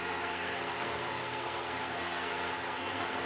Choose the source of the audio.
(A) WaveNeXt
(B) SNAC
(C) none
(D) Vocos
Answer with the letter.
B